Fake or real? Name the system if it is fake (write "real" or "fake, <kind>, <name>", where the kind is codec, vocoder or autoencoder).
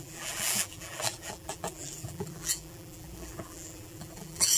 fake, vocoder, BigVGAN v2